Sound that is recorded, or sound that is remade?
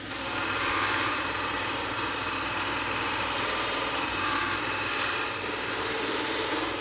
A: remade